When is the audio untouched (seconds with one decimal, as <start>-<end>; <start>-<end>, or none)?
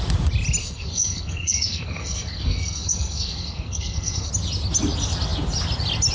0.0-0.6; 4.3-6.1